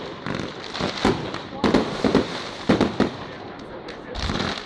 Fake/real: fake